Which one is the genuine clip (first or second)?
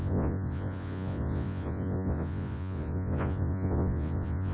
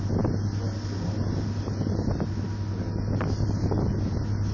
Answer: second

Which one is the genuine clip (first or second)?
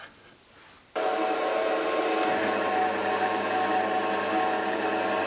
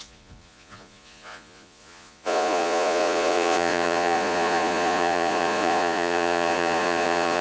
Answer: first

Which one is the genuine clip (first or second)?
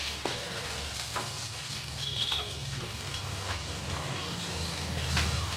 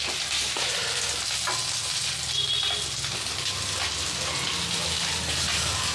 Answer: second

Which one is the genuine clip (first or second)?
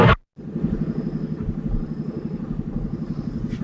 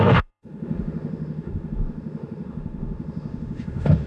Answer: first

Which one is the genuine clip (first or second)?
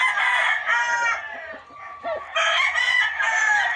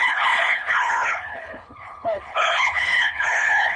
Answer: first